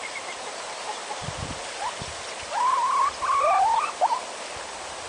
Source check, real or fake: real